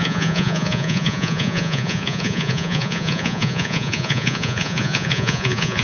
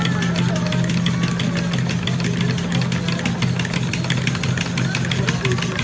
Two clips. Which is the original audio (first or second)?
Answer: second